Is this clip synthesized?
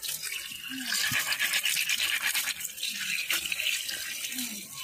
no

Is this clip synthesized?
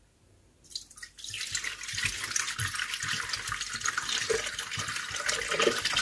yes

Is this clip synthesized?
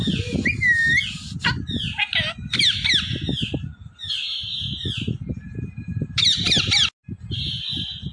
no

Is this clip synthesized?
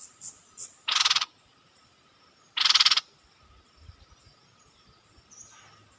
yes